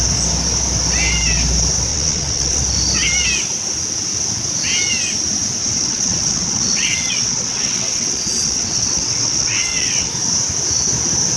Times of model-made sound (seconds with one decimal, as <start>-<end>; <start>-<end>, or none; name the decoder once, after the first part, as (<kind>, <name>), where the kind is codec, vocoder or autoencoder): 1.9-2.6 (vocoder, WaveNeXt); 5.6-10.1